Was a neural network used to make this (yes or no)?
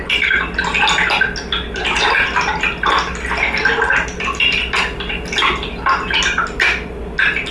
no